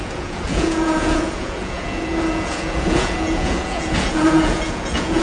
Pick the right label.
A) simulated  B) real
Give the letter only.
A